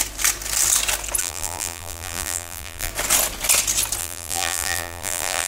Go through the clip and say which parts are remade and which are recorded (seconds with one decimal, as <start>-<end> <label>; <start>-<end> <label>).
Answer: 0.0-1.2 recorded; 1.2-2.9 remade; 2.9-4.0 recorded; 4.0-5.5 remade